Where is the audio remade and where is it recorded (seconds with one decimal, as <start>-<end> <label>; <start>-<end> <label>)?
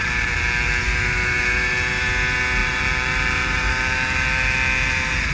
0.0-2.6 recorded; 2.6-3.7 remade; 3.7-5.3 recorded